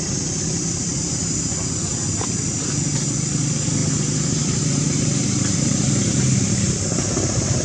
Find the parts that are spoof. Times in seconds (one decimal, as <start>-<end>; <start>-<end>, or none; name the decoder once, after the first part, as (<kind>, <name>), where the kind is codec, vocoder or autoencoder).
3.8-6.5 (vocoder, BigVGAN v2)